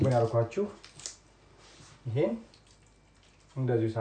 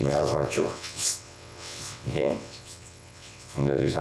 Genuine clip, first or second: first